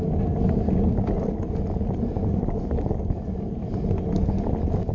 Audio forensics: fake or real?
real